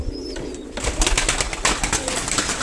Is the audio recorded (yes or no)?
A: yes